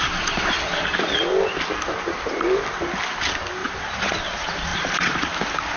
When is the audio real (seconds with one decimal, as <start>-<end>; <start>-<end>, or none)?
0.6-3.6; 4.2-4.7; 5.2-5.8